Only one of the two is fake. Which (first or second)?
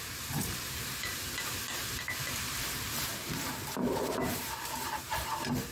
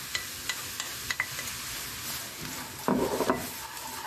first